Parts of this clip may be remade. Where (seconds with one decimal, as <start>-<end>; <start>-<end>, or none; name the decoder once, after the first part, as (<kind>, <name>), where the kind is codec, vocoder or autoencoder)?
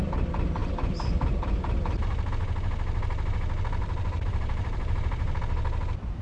0.6-2.3 (vocoder, BigVGAN v2); 3.8-5.4